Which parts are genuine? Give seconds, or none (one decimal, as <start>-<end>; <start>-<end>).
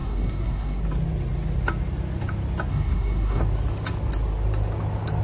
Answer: 0.8-2.7; 3.4-5.2